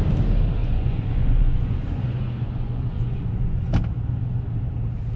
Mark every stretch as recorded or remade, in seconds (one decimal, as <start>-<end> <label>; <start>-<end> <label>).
0.0-0.6 recorded; 0.6-3.7 remade; 3.7-5.2 recorded